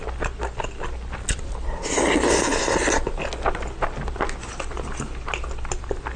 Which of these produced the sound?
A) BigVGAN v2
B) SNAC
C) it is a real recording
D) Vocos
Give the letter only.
C